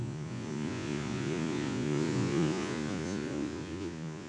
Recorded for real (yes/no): no